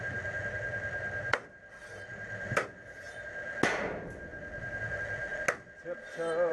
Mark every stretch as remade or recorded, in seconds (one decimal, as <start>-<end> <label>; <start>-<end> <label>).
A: 0.0-2.1 recorded; 2.1-3.3 remade; 3.3-6.5 recorded